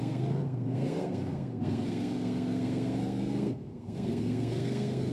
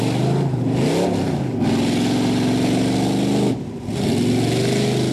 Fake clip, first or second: first